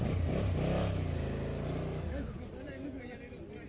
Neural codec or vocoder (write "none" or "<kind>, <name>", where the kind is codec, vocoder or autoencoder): none